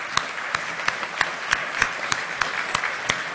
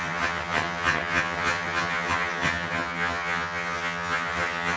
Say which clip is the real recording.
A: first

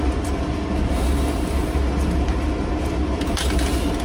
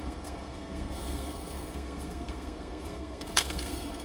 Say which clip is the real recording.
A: first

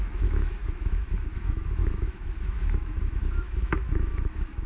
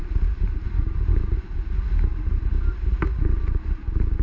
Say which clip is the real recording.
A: second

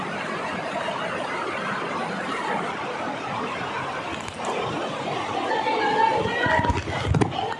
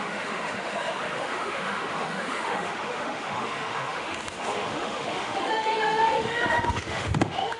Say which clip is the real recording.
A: first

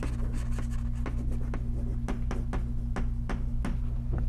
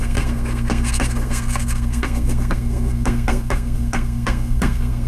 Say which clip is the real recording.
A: first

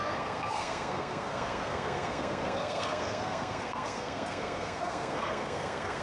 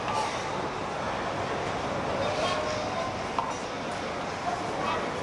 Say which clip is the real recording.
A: second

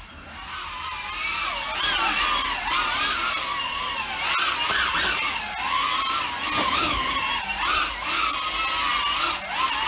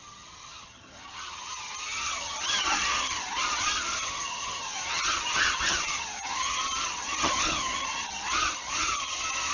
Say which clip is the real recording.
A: first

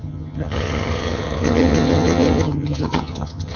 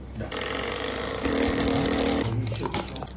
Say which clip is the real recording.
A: second